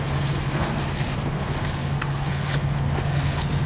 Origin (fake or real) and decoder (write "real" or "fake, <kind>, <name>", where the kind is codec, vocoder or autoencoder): fake, codec, SNAC